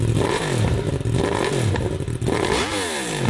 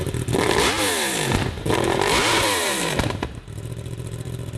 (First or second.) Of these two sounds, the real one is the first